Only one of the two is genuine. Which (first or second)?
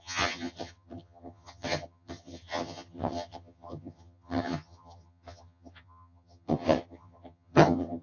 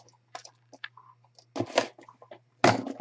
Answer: second